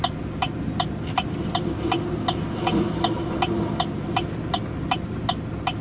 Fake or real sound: real